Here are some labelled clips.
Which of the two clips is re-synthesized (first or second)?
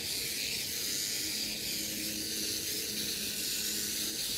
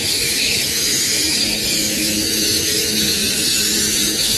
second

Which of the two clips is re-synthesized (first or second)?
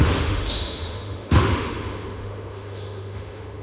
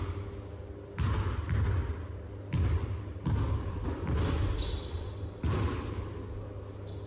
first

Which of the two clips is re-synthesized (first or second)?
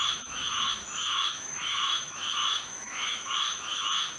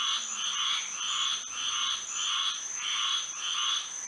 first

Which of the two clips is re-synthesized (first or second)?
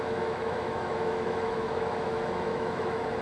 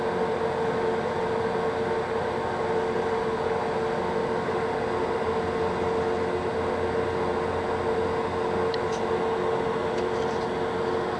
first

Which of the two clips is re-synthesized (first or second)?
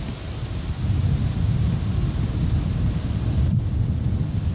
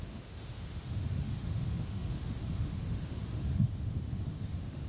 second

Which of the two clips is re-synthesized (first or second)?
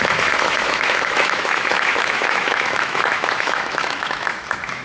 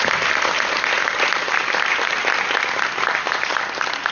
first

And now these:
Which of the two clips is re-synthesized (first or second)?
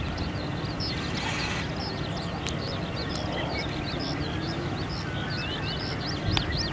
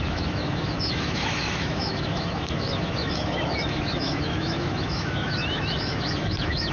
second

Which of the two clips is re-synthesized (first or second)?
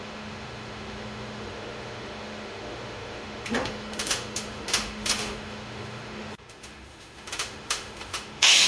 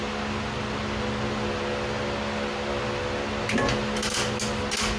first